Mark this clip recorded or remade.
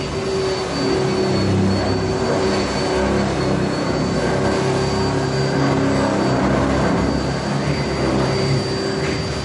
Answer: recorded